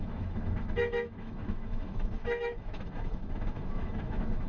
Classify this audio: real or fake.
fake